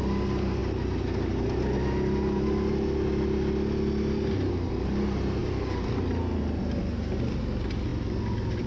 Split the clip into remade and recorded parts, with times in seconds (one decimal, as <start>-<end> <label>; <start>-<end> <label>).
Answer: 0.0-7.9 recorded; 7.9-8.7 remade